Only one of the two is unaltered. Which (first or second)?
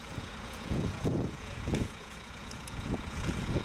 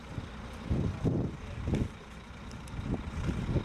second